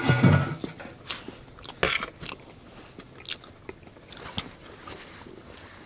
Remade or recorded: recorded